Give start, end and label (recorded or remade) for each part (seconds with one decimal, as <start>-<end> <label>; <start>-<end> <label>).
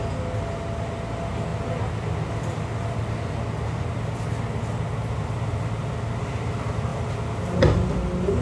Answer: 0.0-8.4 recorded